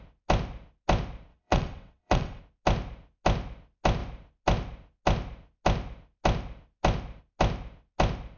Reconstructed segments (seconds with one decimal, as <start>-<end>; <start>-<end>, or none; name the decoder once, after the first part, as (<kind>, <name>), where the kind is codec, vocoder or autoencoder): 1.3-2.4 (vocoder, WaveNeXt)

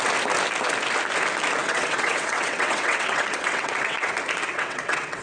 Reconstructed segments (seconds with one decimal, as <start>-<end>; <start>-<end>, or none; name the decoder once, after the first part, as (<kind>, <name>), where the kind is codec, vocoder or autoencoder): 1.6-4.1 (vocoder, WaveNeXt); 4.5-5.2

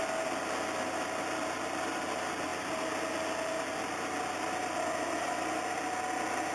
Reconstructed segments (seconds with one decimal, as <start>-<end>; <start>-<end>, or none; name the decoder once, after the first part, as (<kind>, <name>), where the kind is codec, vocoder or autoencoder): none

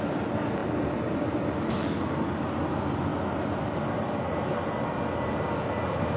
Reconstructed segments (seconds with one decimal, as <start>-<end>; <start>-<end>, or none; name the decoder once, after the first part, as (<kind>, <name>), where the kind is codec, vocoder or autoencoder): none

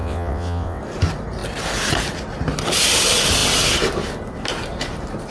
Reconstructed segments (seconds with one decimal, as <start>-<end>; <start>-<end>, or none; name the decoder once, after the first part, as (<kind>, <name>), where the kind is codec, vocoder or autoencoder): 0.0-0.8 (vocoder, WaveNeXt)

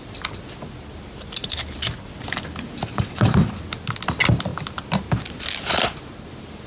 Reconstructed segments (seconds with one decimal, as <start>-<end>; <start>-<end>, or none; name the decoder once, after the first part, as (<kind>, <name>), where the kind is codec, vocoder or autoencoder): 2.9-3.5 (vocoder, WaveNeXt)

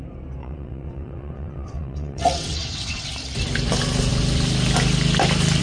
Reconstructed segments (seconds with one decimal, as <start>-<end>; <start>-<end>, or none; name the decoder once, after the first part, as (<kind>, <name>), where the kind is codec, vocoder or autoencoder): 0.4-3.1 (vocoder, WaveNeXt)